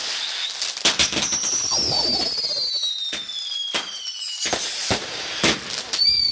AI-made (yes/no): no